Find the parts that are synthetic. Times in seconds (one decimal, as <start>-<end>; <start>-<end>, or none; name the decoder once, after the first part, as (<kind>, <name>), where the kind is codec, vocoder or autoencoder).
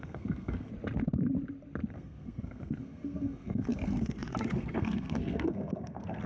0.0-0.7 (codec, SNAC); 1.9-6.3